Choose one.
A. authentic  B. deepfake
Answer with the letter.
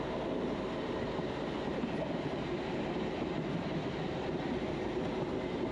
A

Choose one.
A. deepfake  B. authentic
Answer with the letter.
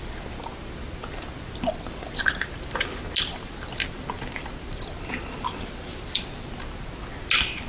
B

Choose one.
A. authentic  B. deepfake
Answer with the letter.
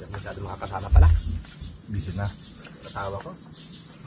A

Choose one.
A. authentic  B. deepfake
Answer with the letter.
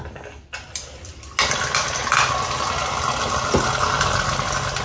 A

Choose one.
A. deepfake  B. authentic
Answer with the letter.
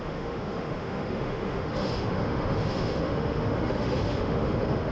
A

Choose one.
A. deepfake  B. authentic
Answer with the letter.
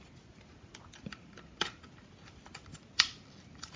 B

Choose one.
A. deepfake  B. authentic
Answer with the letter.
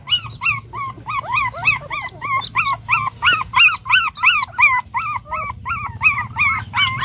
B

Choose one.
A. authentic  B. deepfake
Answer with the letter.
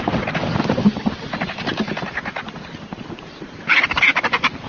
A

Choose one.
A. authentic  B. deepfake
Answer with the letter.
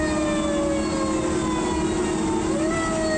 A